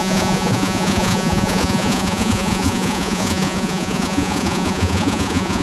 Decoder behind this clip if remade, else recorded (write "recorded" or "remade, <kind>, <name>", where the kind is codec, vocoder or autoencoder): remade, vocoder, Vocos